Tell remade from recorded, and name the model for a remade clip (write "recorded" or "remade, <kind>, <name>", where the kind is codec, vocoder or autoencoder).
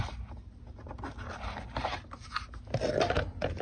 recorded